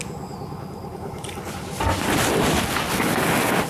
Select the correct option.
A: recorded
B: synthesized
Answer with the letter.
A